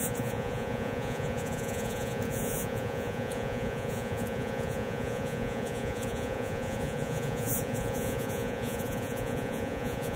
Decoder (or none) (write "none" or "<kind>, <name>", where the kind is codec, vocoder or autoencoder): vocoder, Vocos